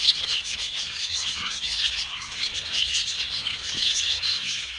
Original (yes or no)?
no